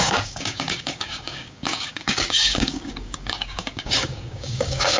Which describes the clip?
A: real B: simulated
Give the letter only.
B